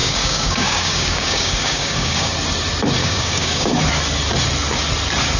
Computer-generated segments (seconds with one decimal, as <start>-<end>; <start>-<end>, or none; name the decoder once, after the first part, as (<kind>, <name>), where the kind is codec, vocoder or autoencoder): 0.0-2.3 (codec, DAC); 3.0-3.7